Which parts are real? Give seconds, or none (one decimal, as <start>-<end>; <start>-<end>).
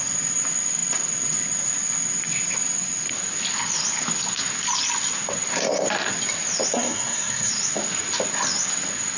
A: 0.0-6.7; 7.5-9.2